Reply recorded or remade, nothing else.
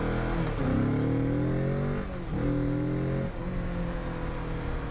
recorded